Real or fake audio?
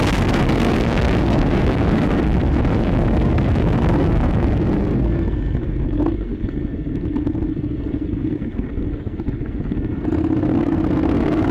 fake